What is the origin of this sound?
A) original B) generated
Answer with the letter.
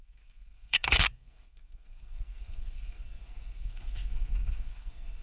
B